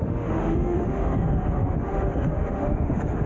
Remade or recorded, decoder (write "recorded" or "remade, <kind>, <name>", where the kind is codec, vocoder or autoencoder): remade, autoencoder, DAC-VAE